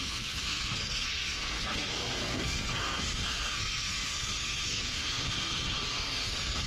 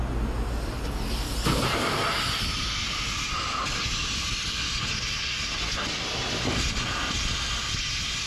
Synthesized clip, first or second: first